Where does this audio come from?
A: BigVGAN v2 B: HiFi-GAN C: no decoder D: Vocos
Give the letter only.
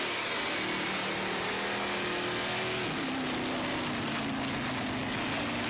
C